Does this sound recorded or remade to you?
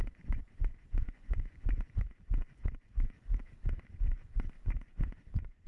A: remade